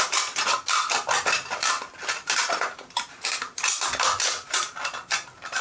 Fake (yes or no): yes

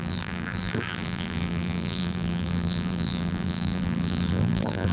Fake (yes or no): yes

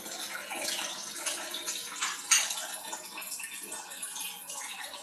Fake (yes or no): no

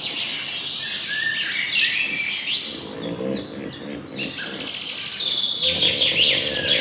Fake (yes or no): no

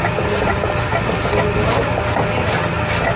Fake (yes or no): no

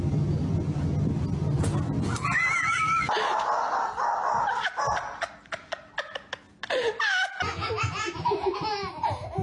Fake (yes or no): no